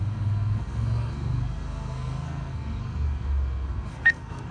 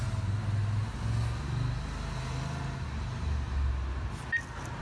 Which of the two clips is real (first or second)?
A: second